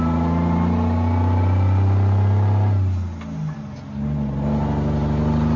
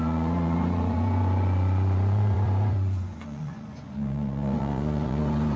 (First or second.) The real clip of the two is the first